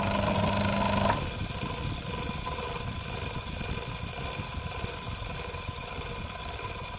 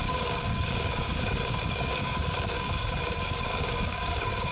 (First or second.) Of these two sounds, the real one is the first